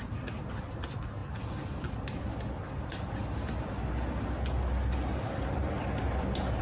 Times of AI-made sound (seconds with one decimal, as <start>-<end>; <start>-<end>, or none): none